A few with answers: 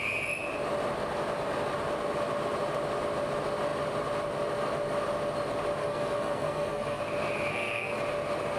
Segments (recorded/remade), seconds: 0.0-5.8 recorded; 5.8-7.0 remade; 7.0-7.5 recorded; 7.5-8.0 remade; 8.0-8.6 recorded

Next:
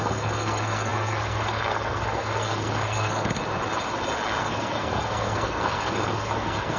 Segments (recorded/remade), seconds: 0.0-3.4 remade; 3.4-4.4 recorded; 4.4-6.8 remade

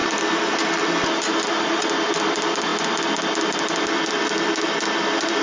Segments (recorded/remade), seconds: 0.0-5.4 recorded

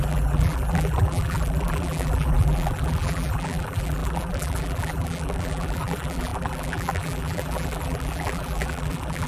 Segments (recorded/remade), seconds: 0.0-9.3 remade

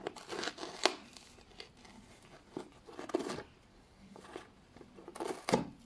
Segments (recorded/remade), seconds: 0.0-3.7 recorded; 3.7-4.2 remade; 4.2-5.9 recorded

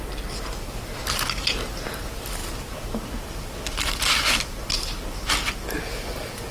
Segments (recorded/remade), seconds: 0.0-6.5 recorded